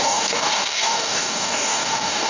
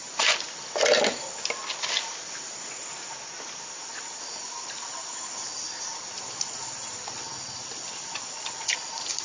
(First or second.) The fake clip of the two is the first